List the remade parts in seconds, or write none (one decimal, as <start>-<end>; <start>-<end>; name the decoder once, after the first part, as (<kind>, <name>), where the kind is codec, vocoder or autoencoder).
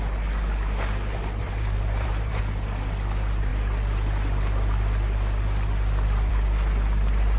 1.4-2.4 (vocoder, BigVGAN v2)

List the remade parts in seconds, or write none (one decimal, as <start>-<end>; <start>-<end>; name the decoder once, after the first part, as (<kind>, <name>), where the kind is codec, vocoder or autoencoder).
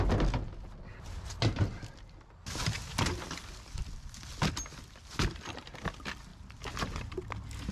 6.3-7.2 (vocoder, BigVGAN v2)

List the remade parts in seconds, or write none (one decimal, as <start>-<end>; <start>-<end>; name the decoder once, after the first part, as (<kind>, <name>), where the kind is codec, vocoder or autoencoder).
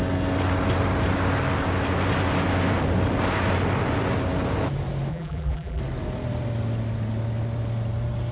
5.1-5.8 (vocoder, BigVGAN v2)